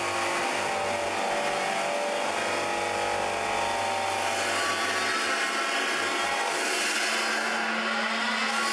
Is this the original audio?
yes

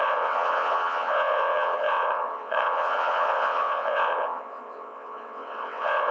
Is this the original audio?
no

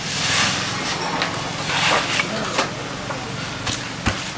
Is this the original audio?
yes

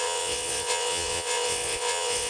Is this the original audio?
no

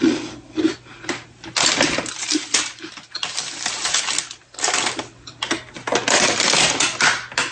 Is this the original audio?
yes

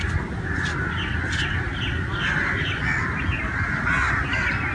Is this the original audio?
yes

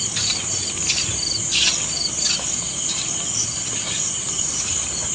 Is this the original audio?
yes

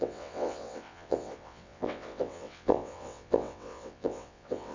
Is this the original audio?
no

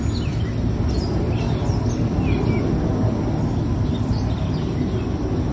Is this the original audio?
yes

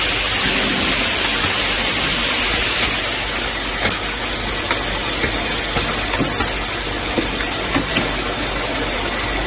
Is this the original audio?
yes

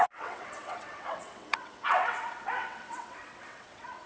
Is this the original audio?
no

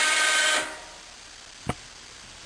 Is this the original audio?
yes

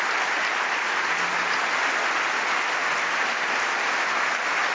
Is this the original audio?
yes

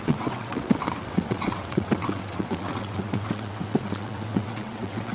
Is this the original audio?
no